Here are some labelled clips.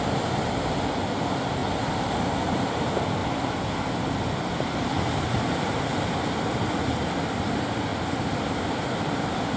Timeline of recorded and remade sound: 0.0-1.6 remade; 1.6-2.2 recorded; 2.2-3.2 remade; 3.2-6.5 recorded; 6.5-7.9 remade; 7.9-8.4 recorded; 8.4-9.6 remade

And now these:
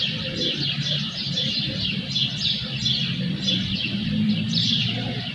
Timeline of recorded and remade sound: 0.0-2.2 remade; 2.2-3.2 recorded; 3.2-5.3 remade

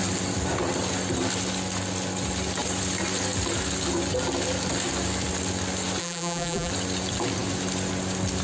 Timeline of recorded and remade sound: 0.0-6.0 recorded; 6.0-6.7 remade; 6.7-8.4 recorded

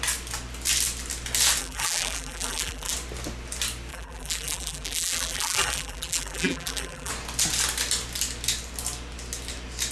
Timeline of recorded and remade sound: 0.0-1.6 recorded; 1.6-2.9 remade; 2.9-3.9 recorded; 3.9-7.1 remade; 7.1-9.9 recorded

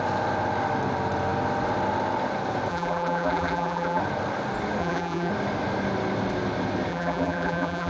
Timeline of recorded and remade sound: 0.0-2.7 recorded; 2.7-4.0 remade; 4.0-4.8 recorded; 4.8-5.3 remade; 5.3-6.9 recorded; 6.9-7.9 remade

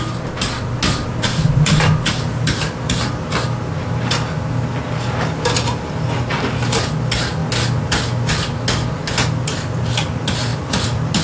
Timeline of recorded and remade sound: 0.0-10.5 recorded; 10.5-11.2 remade

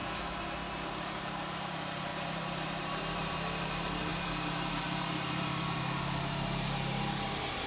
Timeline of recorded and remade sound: 0.0-0.9 recorded; 0.9-7.7 remade